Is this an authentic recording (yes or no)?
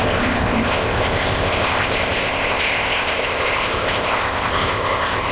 no